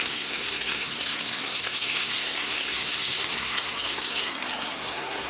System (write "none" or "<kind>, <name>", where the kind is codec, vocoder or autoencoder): codec, SNAC